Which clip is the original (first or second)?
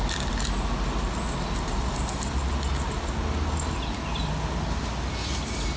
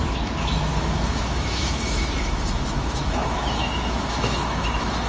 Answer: first